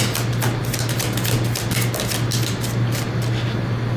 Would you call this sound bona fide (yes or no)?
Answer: yes